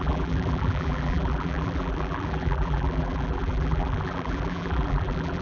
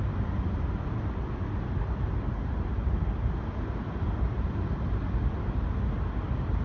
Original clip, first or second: second